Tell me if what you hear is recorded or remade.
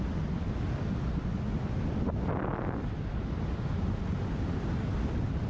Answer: recorded